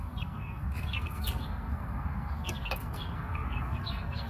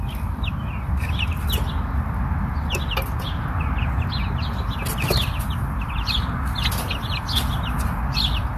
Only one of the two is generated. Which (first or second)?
first